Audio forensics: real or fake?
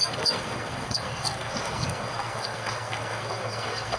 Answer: fake